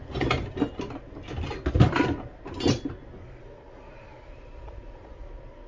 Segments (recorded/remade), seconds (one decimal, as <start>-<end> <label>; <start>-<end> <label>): 0.0-3.4 recorded; 3.4-5.7 remade